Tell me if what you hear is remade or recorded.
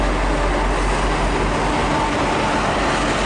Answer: recorded